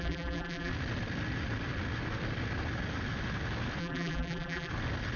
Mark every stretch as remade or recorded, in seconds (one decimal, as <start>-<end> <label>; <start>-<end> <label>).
0.0-0.7 remade; 0.7-3.8 recorded; 3.8-4.7 remade; 4.7-5.2 recorded